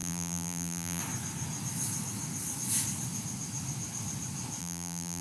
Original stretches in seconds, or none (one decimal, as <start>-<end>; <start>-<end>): 1.0-4.6